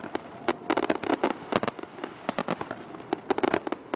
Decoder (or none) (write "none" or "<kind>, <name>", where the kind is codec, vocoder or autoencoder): none